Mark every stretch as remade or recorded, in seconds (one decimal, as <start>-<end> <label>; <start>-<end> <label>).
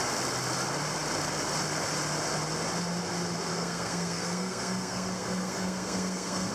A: 0.0-3.5 recorded; 3.5-6.5 remade